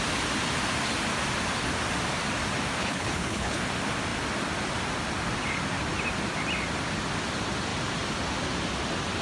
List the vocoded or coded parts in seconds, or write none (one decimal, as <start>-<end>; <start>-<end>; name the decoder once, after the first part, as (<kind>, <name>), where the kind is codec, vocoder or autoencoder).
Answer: 2.8-3.6 (codec, HILCodec)